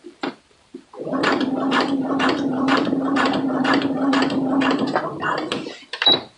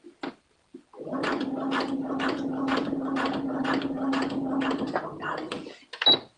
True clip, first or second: second